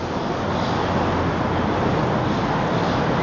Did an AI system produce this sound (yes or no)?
no